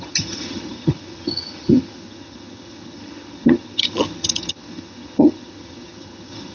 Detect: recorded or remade remade